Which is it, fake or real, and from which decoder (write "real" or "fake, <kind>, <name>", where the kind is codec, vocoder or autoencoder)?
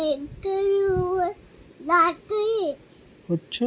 real